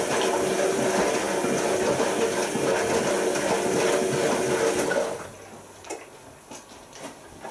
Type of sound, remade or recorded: recorded